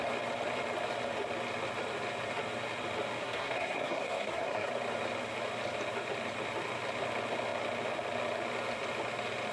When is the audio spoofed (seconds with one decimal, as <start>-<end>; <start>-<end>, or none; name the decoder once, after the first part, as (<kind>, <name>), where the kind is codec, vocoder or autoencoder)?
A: 3.2-4.7 (codec, SNAC)